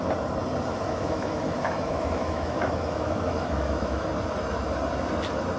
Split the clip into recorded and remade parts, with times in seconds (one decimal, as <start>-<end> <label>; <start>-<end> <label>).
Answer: 0.0-0.7 recorded; 0.7-4.1 remade; 4.1-5.6 recorded